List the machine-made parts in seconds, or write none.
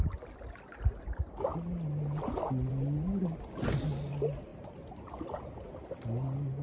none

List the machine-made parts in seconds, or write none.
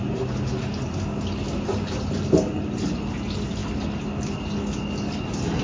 none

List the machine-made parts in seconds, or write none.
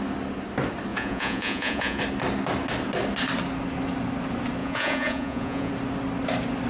0.9-2.0 (vocoder, Vocos); 4.6-5.7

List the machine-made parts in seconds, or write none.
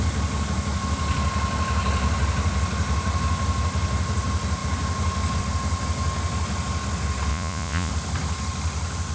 7.3-7.9 (vocoder, Vocos)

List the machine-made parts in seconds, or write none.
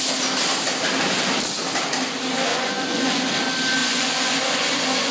2.5-3.2 (vocoder, Vocos); 3.8-5.1